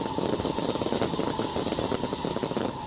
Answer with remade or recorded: recorded